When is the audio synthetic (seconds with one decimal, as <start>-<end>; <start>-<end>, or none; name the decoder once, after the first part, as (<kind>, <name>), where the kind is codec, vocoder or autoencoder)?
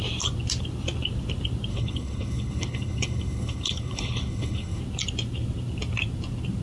1.7-4.8 (codec, HILCodec)